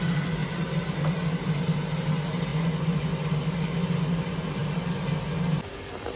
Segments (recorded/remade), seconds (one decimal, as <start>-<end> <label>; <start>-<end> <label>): 0.0-2.5 recorded; 2.5-3.1 remade; 3.1-6.2 recorded